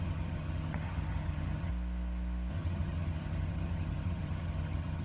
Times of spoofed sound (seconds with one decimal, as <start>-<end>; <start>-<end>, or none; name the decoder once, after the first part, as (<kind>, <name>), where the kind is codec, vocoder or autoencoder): 0.0-1.7 (vocoder, HiFi-GAN); 2.5-5.0